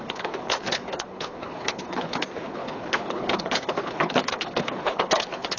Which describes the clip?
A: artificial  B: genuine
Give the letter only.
A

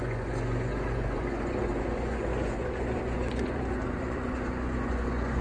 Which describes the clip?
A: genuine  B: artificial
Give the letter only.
B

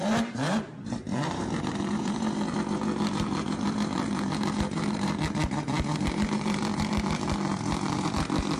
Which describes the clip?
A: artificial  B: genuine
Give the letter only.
A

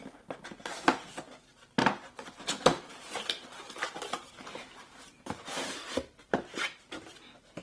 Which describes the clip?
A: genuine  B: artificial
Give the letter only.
A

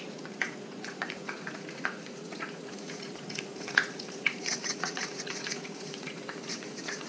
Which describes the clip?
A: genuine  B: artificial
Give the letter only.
B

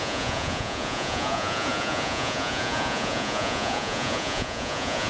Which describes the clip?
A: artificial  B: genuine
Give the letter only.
A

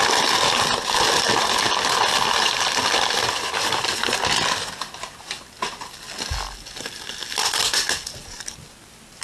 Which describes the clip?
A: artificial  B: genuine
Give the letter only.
B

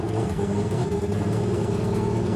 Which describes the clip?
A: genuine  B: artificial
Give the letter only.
B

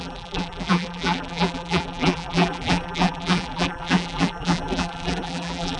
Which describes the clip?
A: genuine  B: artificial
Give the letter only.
B